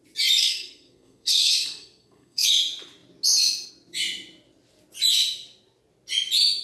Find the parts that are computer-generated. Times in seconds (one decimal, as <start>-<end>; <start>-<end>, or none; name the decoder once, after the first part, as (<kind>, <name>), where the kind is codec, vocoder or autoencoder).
0.4-2.5 (codec, SNAC)